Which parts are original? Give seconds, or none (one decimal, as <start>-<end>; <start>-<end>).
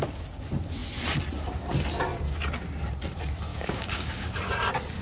0.0-3.5; 4.3-5.0